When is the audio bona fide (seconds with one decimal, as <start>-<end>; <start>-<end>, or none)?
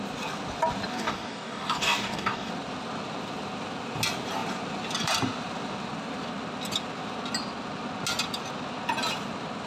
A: 0.0-0.9; 2.5-9.7